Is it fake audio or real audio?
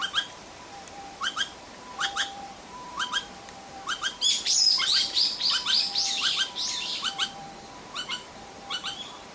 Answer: fake